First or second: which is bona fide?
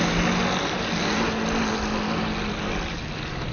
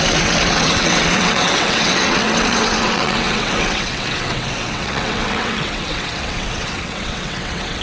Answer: first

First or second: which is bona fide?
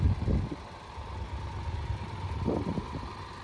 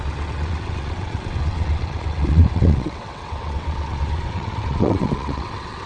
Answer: first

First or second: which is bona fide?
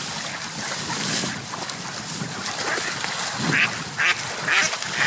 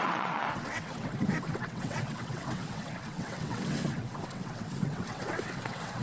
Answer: first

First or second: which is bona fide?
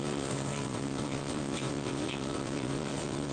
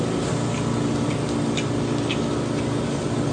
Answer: second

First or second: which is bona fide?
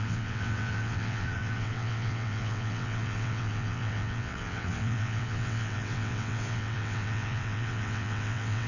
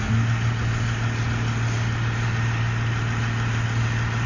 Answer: second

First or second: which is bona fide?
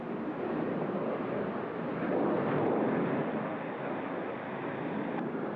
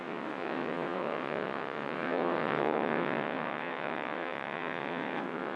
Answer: first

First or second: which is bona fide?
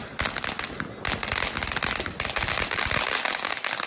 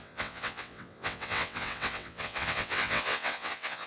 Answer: first